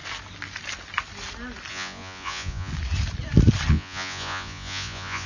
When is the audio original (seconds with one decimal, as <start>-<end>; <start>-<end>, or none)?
0.0-1.7; 2.7-3.7

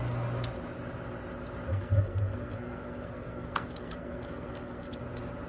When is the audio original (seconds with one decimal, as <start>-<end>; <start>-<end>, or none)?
0.0-1.7; 5.0-5.5

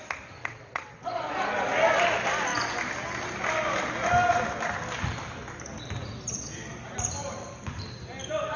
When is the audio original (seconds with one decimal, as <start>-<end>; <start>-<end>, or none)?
0.0-0.4; 1.2-8.6

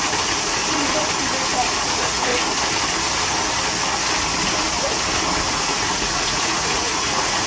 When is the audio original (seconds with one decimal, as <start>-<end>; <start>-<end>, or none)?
0.6-1.8; 2.3-5.5

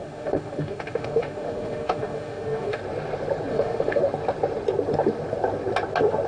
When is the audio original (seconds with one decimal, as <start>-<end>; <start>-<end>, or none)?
2.8-3.5; 4.0-6.3

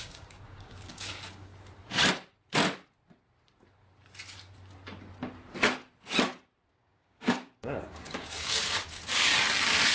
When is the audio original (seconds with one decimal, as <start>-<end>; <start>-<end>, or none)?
1.5-6.7; 9.3-9.9

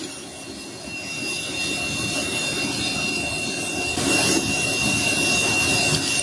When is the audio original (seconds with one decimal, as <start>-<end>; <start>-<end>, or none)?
0.0-6.2